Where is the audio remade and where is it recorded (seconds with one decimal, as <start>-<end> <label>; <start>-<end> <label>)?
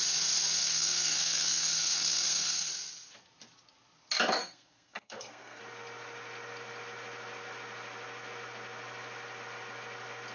0.0-0.6 recorded; 0.6-2.7 remade; 2.7-4.4 recorded; 4.4-5.6 remade; 5.6-10.3 recorded